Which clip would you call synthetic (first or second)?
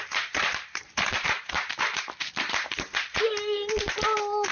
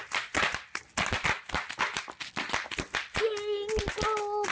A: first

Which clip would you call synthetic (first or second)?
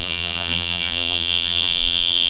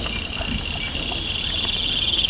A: first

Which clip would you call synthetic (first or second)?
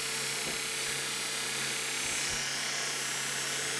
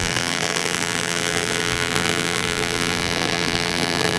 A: second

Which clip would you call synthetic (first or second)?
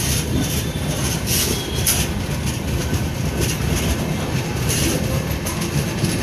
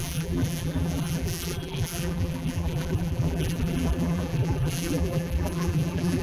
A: second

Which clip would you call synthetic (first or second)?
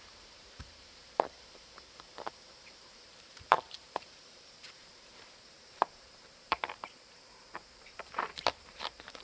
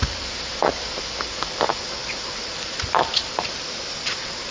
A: first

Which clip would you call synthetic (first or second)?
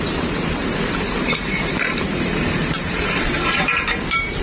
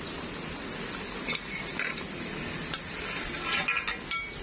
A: first